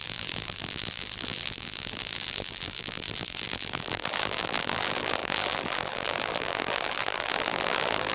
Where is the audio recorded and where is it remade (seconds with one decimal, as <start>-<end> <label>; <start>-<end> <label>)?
0.0-8.1 remade